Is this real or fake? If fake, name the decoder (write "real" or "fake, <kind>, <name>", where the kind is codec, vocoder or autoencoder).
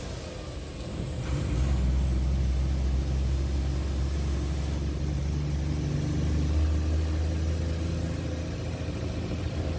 real